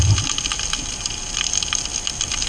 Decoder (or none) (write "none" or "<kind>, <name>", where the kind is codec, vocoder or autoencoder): none